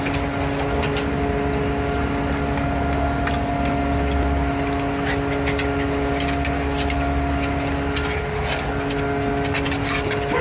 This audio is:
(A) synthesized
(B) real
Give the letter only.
B